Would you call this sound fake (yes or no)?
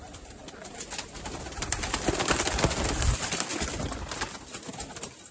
no